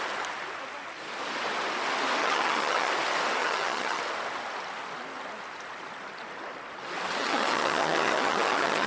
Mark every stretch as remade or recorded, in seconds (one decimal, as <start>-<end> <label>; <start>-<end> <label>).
0.0-2.2 recorded; 2.2-2.9 remade; 2.9-3.4 recorded; 3.4-4.0 remade; 4.0-7.2 recorded; 7.2-8.9 remade